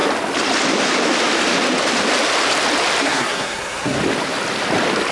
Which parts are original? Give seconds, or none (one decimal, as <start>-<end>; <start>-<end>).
0.0-3.0; 4.0-5.1